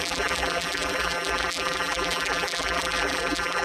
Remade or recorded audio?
remade